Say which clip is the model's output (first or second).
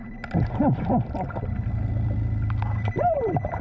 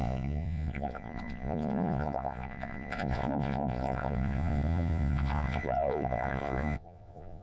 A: second